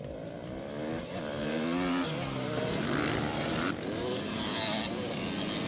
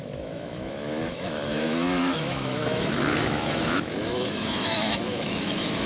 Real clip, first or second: first